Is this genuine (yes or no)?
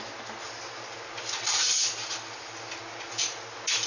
yes